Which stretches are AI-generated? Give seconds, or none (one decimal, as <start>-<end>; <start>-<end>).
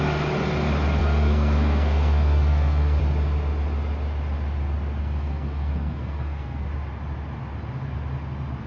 1.0-3.0; 5.0-6.7